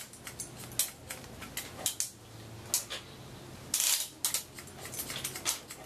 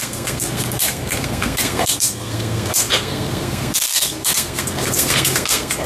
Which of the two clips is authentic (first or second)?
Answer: first